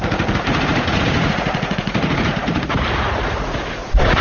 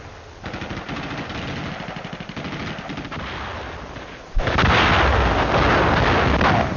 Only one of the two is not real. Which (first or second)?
first